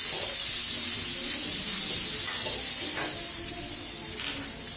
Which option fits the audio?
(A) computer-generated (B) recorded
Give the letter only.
B